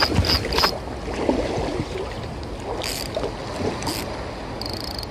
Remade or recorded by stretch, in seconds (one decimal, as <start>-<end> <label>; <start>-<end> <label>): 0.0-1.7 recorded; 1.7-2.5 remade; 2.5-5.1 recorded